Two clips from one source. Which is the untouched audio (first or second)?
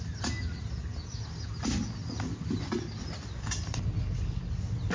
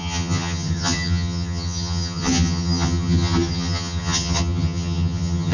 first